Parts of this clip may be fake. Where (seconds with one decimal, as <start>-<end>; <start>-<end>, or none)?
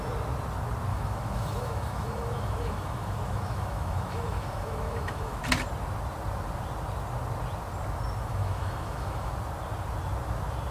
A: 0.9-5.4; 8.3-9.3